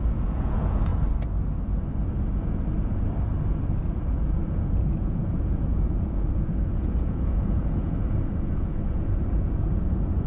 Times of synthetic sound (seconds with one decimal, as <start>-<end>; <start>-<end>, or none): 0.0-0.9; 3.7-10.3